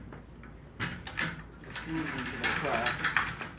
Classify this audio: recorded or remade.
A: recorded